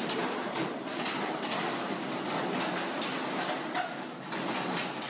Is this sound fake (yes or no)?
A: no